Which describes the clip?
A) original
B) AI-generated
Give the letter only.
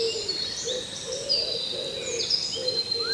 A